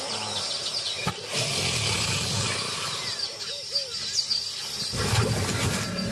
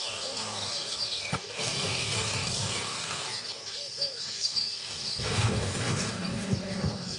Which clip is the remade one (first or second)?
second